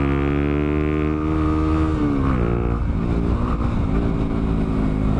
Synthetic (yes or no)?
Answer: no